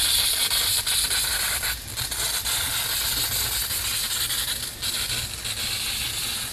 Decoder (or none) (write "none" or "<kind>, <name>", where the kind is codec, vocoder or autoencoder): none